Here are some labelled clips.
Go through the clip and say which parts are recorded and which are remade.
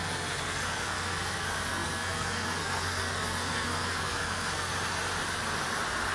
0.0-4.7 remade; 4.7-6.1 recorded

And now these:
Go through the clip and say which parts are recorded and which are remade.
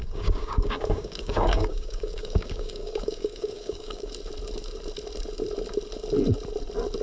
0.0-4.1 remade; 4.1-7.0 recorded